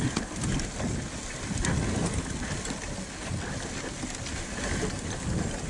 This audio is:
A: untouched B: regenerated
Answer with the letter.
A